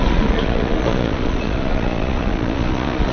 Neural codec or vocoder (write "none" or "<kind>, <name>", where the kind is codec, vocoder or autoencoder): vocoder, Vocos